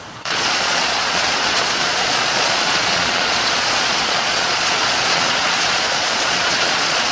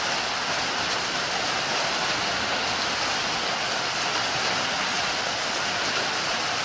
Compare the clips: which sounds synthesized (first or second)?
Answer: first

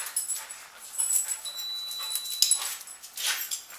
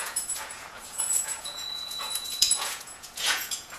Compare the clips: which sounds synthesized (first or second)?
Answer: second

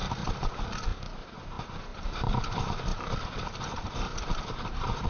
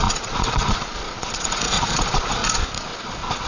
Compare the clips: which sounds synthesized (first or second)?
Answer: second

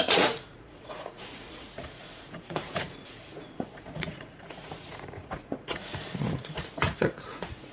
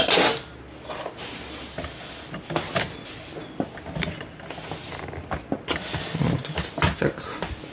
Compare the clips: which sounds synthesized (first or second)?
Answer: first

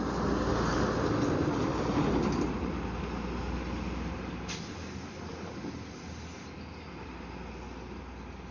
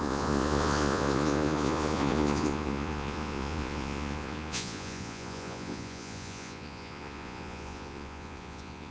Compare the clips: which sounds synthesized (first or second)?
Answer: second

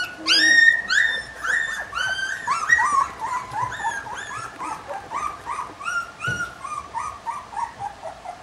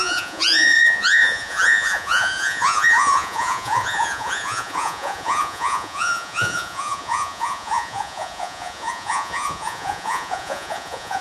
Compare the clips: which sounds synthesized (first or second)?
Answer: second